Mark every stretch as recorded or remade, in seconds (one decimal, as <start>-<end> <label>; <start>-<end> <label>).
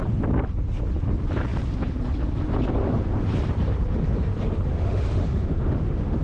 0.0-2.8 recorded; 2.8-3.3 remade; 3.3-4.7 recorded; 4.7-6.2 remade